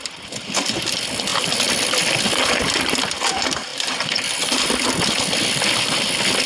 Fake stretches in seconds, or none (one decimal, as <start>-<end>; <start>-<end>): none